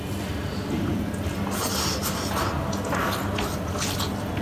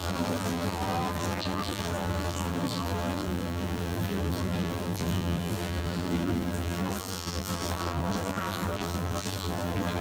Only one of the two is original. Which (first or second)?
first